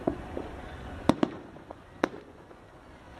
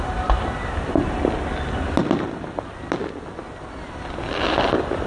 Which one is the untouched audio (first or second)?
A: second